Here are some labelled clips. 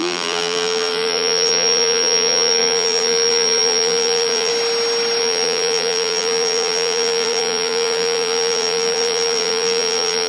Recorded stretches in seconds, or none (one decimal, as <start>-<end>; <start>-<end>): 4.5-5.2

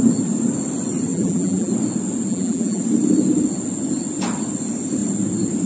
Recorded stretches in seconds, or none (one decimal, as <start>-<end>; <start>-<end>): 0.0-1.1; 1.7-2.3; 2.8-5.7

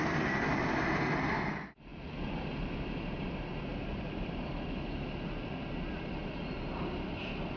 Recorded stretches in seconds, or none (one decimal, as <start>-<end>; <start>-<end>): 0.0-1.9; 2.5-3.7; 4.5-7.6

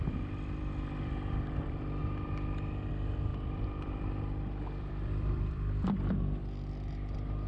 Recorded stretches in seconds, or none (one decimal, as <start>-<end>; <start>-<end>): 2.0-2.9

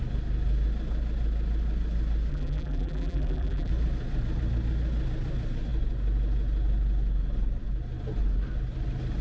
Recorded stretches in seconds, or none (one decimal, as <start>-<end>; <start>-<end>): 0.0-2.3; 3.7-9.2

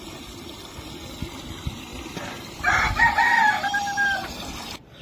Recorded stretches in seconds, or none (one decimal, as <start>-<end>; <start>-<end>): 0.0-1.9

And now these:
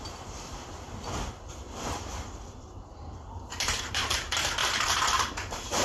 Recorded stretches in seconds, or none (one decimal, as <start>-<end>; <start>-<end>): 0.6-2.3; 4.6-5.2

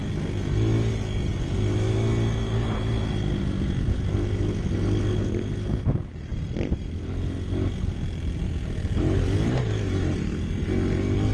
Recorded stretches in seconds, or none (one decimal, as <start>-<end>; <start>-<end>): 0.0-11.3